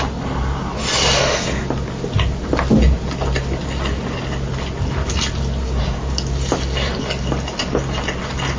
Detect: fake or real real